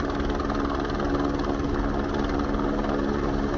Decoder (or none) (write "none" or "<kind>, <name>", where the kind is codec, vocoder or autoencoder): none